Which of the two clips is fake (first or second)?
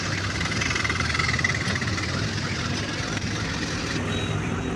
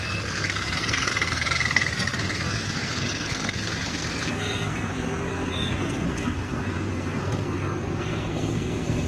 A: second